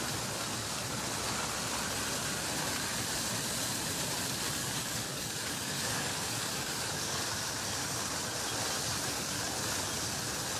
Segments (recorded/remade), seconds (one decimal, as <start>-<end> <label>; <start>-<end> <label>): 0.0-4.6 recorded; 4.6-7.2 remade; 7.2-10.6 recorded

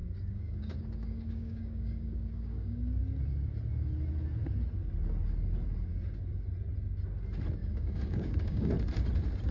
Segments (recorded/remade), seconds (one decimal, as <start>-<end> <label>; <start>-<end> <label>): 0.0-3.0 remade; 3.0-7.6 recorded; 7.6-8.7 remade; 8.7-9.5 recorded

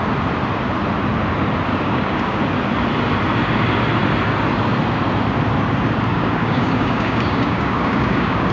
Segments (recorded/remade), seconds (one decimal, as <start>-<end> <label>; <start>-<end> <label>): 0.0-1.7 recorded; 1.7-2.4 remade; 2.4-6.1 recorded; 6.1-8.5 remade

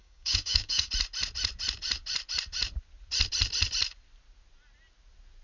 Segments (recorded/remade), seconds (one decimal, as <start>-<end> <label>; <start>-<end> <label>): 0.0-0.9 remade; 0.9-5.4 recorded

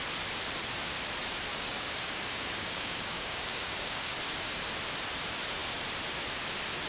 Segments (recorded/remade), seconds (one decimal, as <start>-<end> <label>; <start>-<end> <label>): 0.0-1.5 recorded; 1.5-4.1 remade; 4.1-6.9 recorded

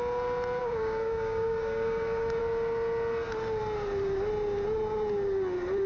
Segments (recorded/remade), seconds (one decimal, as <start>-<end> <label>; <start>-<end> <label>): 0.0-0.6 recorded; 0.6-2.4 remade; 2.4-5.9 recorded